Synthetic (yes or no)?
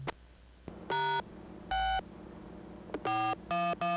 no